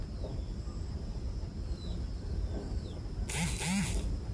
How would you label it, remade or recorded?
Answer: recorded